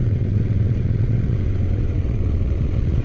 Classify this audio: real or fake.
fake